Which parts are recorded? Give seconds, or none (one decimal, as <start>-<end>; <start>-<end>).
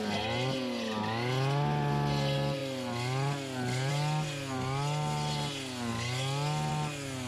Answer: 0.0-7.3